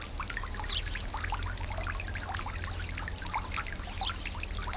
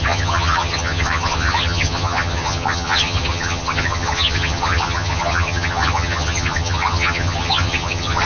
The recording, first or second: first